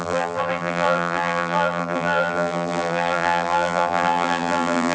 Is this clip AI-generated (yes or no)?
yes